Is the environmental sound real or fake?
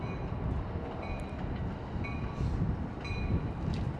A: real